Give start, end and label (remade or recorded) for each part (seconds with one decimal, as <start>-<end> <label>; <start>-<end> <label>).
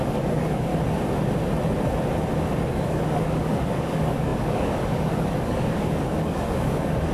0.0-0.7 remade; 0.7-2.7 recorded; 2.7-7.1 remade